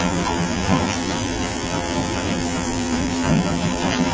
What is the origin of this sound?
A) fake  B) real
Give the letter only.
A